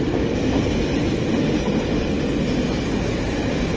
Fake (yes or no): no